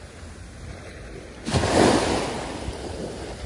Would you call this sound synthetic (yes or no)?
no